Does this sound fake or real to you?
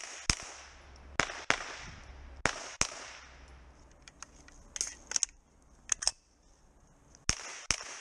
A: real